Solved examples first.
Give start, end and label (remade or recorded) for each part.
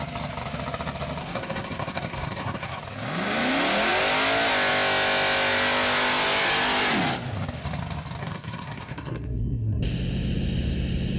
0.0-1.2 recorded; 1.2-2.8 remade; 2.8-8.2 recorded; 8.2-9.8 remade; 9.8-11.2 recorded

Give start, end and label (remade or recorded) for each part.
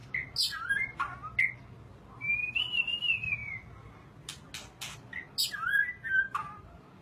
0.0-7.0 recorded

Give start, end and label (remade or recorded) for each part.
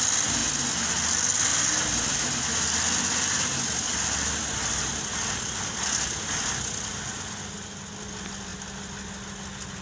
0.0-9.8 recorded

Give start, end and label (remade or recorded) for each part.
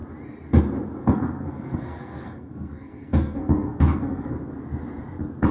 0.0-1.0 recorded; 1.0-4.3 remade; 4.3-5.5 recorded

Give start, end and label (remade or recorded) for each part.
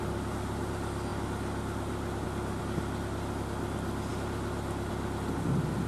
0.0-5.9 recorded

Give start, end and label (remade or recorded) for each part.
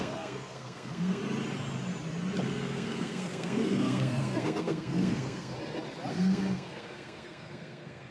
0.0-1.2 remade; 1.2-2.4 recorded; 2.4-5.5 remade; 5.5-6.1 recorded; 6.1-8.1 remade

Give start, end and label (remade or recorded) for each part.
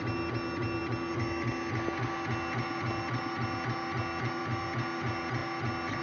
0.0-6.0 recorded